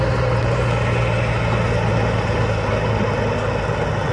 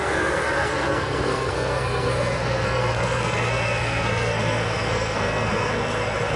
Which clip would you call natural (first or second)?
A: first